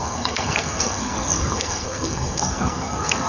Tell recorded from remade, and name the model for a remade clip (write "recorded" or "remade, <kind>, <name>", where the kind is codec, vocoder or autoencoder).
remade, codec, SNAC